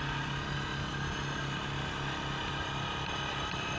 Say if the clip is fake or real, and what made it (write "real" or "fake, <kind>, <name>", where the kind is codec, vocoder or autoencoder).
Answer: real